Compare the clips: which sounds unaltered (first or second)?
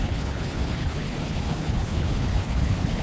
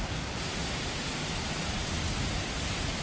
second